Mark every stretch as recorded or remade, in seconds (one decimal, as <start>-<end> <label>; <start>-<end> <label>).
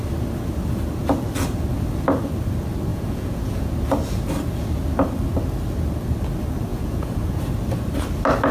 0.0-2.9 recorded; 2.9-3.7 remade; 3.7-6.7 recorded; 6.7-7.4 remade; 7.4-8.5 recorded